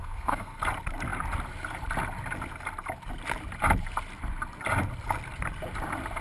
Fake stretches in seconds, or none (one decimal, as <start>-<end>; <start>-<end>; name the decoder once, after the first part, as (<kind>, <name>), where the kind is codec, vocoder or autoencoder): 0.0-0.6 (codec, SNAC)